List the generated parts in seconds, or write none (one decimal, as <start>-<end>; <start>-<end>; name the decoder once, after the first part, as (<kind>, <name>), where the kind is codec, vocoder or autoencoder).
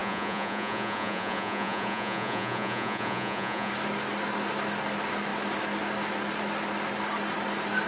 0.0-3.7 (vocoder, Vocos)